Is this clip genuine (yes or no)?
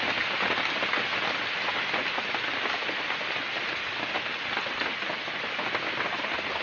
yes